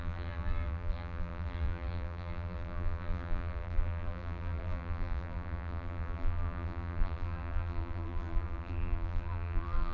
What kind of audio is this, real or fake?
fake